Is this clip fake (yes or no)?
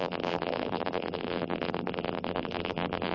yes